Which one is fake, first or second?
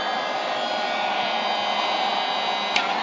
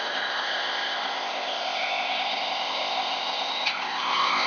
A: second